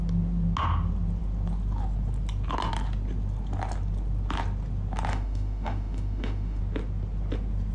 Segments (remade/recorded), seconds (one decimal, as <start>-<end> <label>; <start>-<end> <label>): 0.0-5.1 recorded; 5.1-6.6 remade; 6.6-7.7 recorded